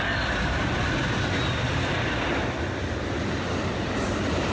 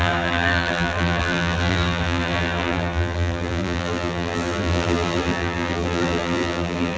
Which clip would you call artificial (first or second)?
second